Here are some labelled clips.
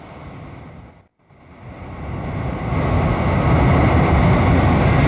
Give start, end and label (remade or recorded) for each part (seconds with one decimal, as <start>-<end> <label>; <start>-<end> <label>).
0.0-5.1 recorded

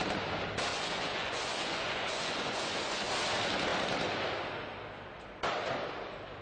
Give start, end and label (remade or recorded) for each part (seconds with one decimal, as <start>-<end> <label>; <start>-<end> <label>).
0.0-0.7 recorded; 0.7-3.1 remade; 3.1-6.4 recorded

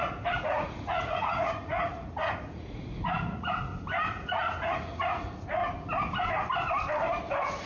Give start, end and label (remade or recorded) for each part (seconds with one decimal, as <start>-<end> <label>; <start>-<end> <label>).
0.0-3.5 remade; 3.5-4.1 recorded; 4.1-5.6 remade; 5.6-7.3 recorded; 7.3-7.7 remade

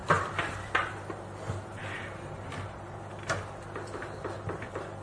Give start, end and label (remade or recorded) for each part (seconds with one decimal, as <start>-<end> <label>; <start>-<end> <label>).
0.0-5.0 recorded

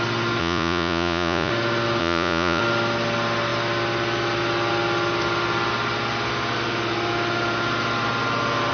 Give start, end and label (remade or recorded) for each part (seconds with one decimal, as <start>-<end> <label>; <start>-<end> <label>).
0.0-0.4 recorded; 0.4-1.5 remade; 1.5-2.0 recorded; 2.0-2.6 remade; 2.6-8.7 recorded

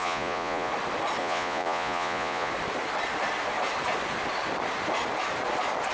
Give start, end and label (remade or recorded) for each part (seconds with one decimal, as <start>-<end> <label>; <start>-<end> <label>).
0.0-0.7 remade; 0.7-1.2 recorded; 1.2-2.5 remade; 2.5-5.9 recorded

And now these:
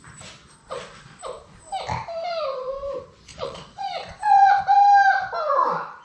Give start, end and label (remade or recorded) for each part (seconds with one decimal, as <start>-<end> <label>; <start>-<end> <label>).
0.0-0.6 recorded; 0.6-1.2 remade; 1.2-3.3 recorded; 3.3-4.6 remade; 4.6-6.0 recorded

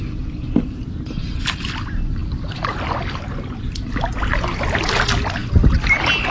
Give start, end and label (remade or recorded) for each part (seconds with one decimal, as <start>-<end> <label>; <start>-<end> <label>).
0.0-6.3 recorded